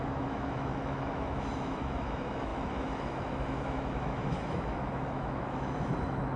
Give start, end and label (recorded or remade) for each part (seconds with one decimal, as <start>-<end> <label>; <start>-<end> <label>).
0.0-6.4 remade